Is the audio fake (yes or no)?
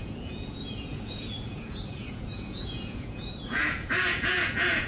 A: yes